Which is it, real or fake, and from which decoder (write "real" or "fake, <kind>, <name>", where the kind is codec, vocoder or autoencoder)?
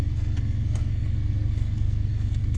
fake, codec, SNAC